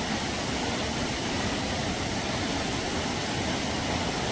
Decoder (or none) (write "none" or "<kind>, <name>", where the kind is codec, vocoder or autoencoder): none